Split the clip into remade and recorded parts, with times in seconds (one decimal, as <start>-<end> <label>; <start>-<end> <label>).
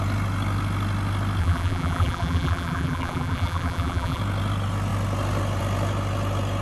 0.0-1.4 recorded; 1.4-4.2 remade; 4.2-6.6 recorded